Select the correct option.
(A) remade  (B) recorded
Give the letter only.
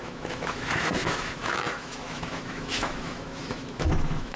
A